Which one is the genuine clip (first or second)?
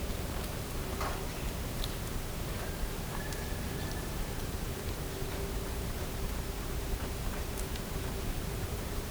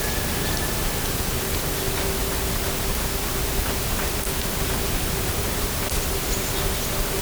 second